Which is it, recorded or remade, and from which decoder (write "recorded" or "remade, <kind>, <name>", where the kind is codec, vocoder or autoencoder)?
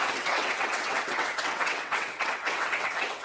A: remade, vocoder, WaveNeXt